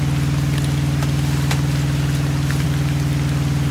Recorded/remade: recorded